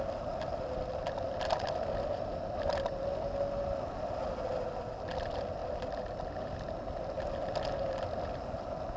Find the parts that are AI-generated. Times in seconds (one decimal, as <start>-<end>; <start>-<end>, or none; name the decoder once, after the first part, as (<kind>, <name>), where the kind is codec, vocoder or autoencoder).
none